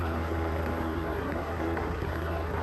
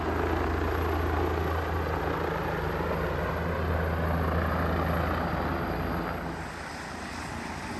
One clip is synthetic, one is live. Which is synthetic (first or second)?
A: first